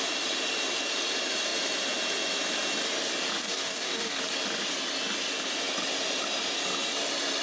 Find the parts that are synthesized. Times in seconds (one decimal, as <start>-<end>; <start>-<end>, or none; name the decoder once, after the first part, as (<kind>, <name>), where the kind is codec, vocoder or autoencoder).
3.4-4.2 (codec, DAC)